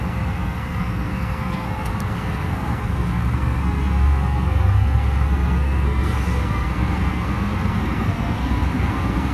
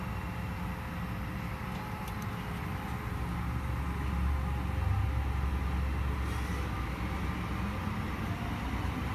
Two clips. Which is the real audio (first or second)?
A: second